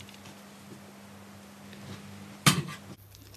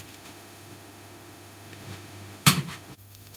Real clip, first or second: first